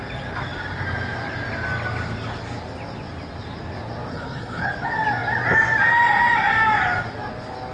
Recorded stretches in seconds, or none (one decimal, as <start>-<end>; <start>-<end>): 0.0-4.1; 4.7-7.7